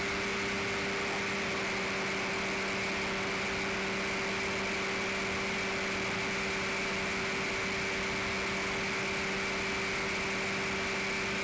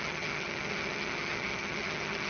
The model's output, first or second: second